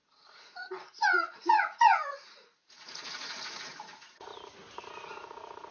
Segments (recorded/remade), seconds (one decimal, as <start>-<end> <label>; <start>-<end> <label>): 0.0-4.3 remade; 4.3-4.9 recorded; 4.9-5.7 remade